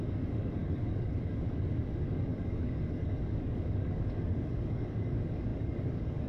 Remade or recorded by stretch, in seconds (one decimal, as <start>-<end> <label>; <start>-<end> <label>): 0.0-6.3 remade